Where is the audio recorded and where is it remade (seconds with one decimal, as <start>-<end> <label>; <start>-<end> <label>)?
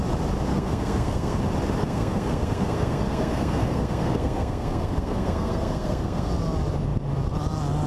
0.0-0.5 recorded; 0.5-1.4 remade; 1.4-1.8 recorded; 1.8-6.3 remade; 6.3-7.9 recorded